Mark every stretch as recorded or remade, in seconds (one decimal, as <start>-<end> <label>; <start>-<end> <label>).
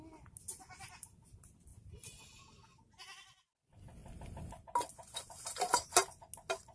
0.0-6.7 recorded